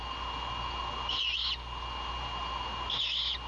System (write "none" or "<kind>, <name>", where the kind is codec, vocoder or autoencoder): none